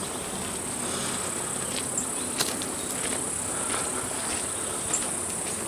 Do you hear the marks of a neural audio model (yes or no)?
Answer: no